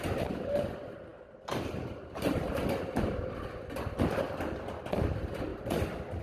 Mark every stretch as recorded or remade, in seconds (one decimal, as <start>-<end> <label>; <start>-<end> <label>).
0.0-6.2 recorded